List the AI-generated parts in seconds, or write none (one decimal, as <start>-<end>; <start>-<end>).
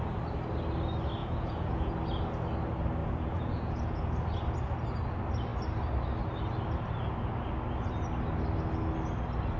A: 1.2-1.9; 3.0-4.0